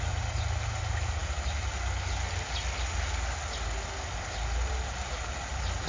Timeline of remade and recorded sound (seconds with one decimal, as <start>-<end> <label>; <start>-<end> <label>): 0.0-5.9 recorded